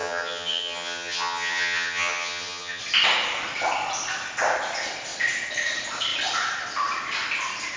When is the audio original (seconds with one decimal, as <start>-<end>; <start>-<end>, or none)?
2.8-7.8